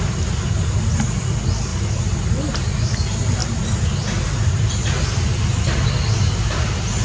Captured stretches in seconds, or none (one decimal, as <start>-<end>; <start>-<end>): 0.0-1.7; 2.2-6.0; 6.6-7.0